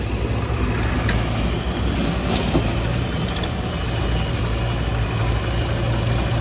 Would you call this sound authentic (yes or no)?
yes